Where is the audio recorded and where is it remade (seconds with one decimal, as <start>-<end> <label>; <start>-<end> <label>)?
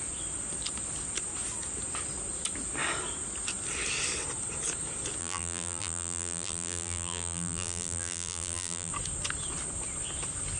0.0-5.2 recorded; 5.2-8.9 remade; 8.9-10.6 recorded